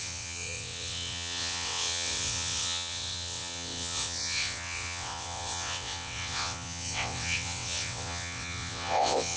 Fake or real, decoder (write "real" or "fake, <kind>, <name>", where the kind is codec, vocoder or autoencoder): fake, vocoder, WaveNeXt